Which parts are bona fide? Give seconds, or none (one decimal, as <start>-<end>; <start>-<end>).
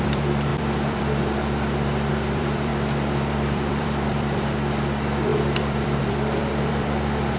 2.7-3.2